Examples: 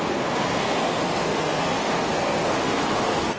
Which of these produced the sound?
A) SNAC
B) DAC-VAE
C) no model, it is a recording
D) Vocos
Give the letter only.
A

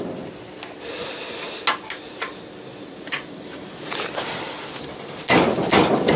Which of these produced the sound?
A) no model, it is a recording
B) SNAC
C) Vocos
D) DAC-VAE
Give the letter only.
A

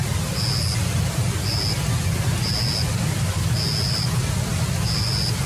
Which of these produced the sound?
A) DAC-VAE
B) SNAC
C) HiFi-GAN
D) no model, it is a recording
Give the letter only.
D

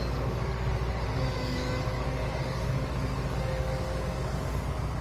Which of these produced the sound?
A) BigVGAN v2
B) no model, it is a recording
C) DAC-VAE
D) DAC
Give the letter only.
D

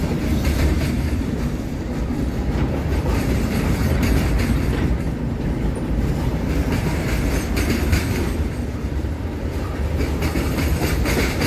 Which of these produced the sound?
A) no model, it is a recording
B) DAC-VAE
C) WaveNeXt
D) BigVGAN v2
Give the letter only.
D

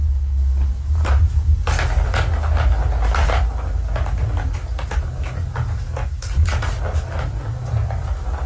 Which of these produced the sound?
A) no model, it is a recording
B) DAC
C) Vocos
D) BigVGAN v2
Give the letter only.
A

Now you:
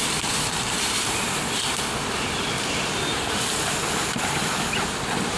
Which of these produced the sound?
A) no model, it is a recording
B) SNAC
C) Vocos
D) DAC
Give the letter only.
A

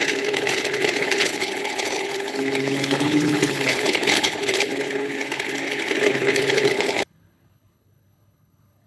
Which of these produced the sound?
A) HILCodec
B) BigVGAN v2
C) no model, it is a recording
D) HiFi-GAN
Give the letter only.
A